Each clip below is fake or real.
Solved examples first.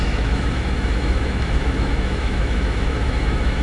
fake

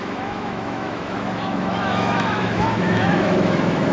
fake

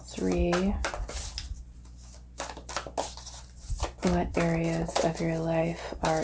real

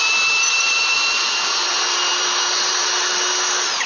real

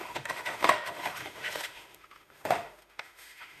fake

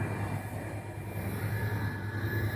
real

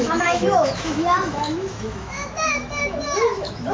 fake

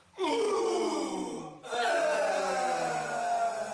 real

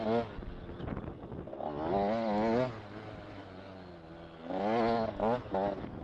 real